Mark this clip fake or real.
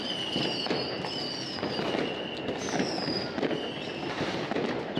real